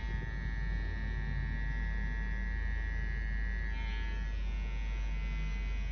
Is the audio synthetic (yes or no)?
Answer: no